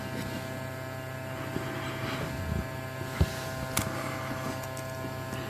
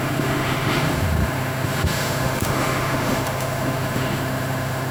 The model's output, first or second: second